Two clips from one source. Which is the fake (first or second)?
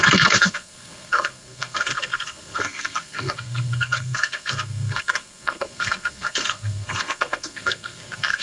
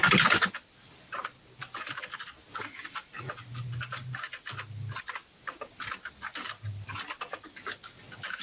first